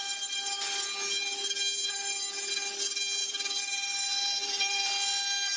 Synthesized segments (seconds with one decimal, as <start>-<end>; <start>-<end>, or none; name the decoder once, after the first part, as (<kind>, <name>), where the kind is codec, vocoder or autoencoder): 3.2-4.9 (vocoder, BigVGAN v2)